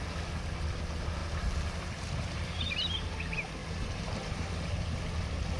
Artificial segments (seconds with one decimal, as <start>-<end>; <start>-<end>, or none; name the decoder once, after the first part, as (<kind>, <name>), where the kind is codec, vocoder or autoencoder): 1.2-3.1 (vocoder, BigVGAN v2); 3.6-4.7